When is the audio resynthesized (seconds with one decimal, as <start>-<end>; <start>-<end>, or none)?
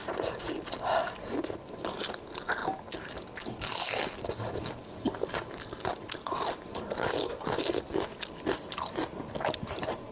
none